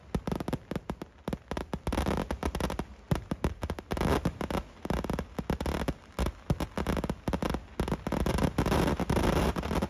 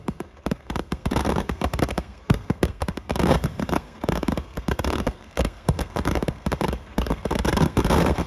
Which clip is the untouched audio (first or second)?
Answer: first